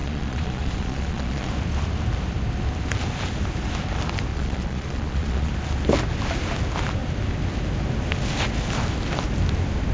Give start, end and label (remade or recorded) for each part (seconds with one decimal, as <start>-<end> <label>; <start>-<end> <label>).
0.0-1.5 remade; 1.5-4.3 recorded; 4.3-5.5 remade; 5.5-9.9 recorded